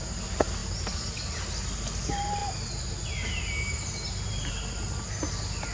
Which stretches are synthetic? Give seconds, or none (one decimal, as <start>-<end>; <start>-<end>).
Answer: none